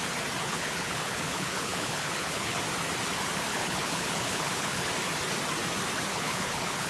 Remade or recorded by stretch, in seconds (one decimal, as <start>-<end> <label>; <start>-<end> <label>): 0.0-0.4 recorded; 0.4-2.6 remade; 2.6-3.5 recorded; 3.5-4.9 remade; 4.9-6.1 recorded; 6.1-6.9 remade